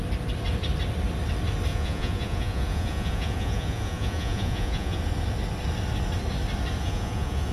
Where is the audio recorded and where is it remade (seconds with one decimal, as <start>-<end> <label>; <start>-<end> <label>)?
0.0-1.7 recorded; 1.7-5.0 remade; 5.0-6.8 recorded; 6.8-7.5 remade